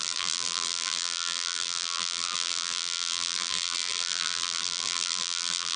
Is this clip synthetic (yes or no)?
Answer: yes